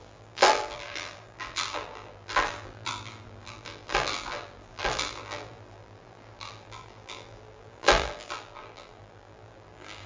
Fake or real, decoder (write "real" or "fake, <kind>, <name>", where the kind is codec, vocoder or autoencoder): fake, vocoder, BigVGAN v2